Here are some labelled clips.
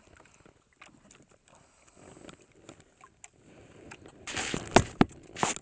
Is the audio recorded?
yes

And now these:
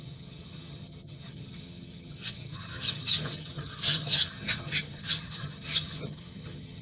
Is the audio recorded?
no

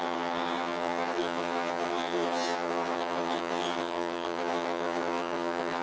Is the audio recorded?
no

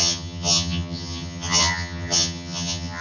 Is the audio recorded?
no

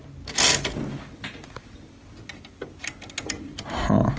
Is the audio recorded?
yes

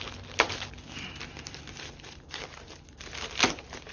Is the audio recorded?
yes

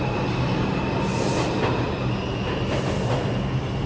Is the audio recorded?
yes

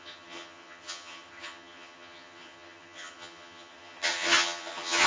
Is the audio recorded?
no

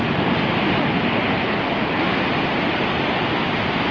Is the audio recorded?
yes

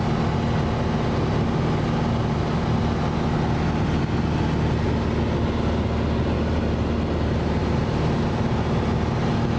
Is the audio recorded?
yes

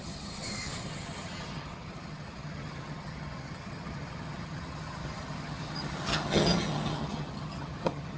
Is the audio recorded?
no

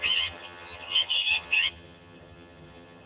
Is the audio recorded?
no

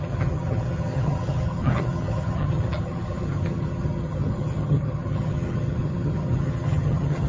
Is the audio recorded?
no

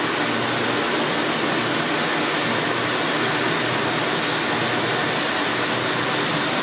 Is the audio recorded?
yes